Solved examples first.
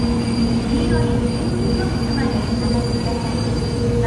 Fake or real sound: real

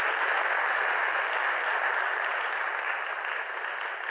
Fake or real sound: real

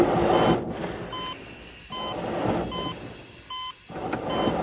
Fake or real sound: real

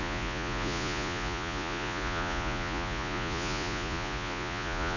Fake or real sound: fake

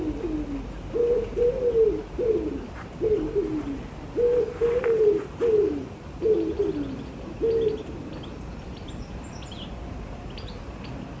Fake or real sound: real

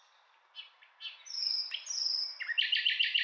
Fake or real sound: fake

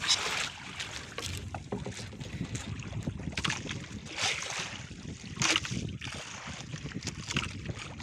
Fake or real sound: real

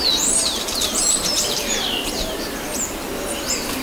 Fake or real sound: fake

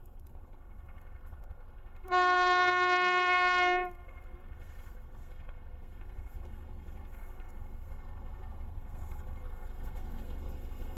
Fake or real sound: fake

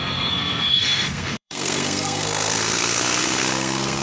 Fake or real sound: fake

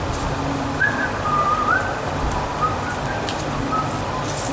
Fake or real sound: real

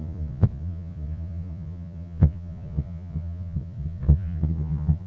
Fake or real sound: fake